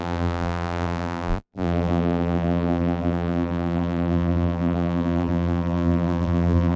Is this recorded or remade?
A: remade